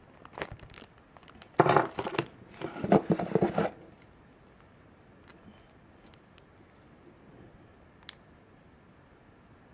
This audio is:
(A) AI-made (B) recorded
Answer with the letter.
B